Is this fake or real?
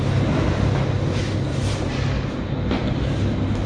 real